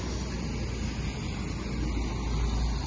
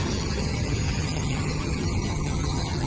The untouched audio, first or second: first